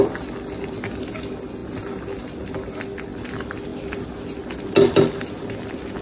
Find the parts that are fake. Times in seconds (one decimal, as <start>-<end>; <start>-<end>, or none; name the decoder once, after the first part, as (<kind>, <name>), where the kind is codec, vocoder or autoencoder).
none